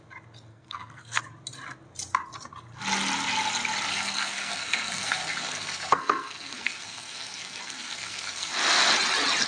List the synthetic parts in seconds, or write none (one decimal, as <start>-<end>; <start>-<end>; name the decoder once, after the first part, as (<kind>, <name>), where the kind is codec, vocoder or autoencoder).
0.5-1.2 (codec, SNAC); 3.9-8.5